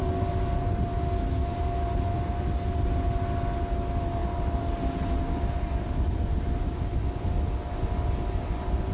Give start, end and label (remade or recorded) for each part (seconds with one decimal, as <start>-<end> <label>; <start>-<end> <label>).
0.0-8.9 recorded